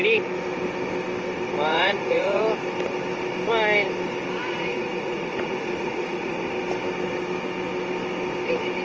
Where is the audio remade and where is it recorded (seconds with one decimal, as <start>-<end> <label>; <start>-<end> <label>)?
0.0-1.7 recorded; 1.7-2.4 remade; 2.4-4.4 recorded; 4.4-6.6 remade; 6.6-8.8 recorded